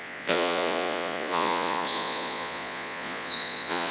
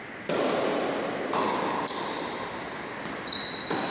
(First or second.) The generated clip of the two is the first